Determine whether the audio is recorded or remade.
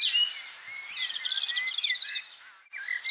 recorded